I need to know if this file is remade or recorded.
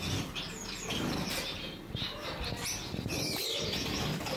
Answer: recorded